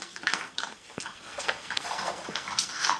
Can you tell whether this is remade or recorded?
remade